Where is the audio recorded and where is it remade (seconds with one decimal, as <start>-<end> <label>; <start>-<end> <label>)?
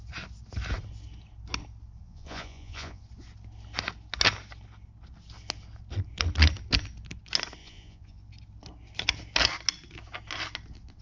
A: 0.0-2.0 recorded; 2.0-3.0 remade; 3.0-7.6 recorded; 7.6-8.2 remade; 8.2-11.0 recorded